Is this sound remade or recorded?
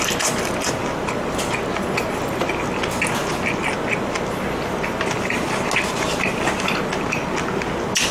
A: recorded